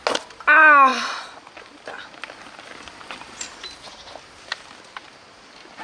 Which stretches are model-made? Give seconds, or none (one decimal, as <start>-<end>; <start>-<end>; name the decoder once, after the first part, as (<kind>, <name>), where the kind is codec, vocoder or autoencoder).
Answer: none